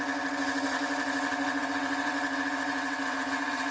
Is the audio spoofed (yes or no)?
yes